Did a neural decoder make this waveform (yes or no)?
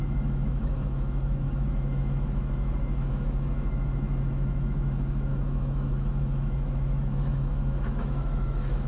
yes